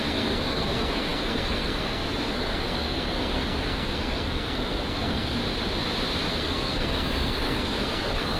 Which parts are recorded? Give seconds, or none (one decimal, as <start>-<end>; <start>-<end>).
5.4-6.3